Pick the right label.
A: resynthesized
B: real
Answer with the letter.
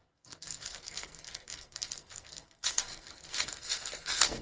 A